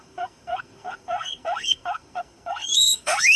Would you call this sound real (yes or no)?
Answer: no